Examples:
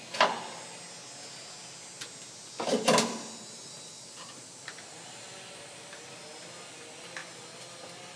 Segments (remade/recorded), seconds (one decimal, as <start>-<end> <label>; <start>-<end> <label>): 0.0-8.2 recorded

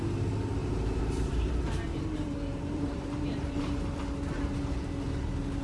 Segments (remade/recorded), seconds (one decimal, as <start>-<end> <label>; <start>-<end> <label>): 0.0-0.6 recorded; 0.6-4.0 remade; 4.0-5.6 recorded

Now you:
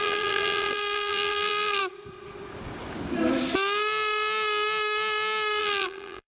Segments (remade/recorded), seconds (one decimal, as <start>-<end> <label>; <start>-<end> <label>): 0.0-1.8 remade; 1.8-5.6 recorded; 5.6-6.3 remade